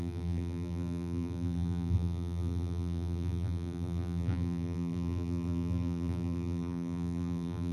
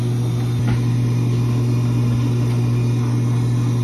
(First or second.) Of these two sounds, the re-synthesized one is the first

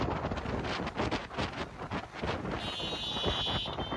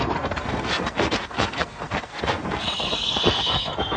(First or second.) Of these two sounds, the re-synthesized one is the second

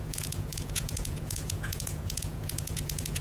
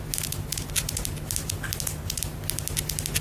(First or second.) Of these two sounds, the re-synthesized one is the first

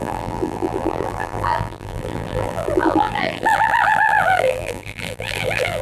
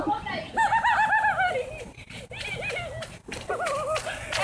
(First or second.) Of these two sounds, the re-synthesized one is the first